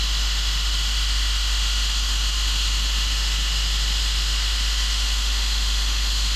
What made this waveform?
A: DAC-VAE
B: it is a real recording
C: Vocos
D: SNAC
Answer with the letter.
A